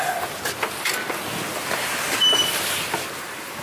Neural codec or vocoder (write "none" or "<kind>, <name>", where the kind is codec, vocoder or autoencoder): none